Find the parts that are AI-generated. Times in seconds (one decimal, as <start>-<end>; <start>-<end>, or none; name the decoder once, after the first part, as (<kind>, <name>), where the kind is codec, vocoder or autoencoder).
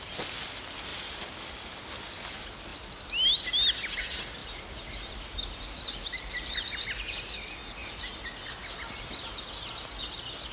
0.9-1.8 (vocoder, BigVGAN v2); 4.4-5.6